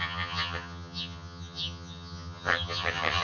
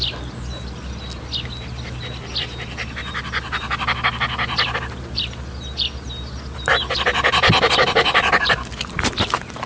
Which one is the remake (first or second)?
first